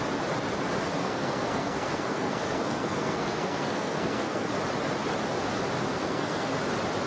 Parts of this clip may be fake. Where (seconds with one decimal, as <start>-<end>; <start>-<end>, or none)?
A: 1.0-4.5; 5.9-6.5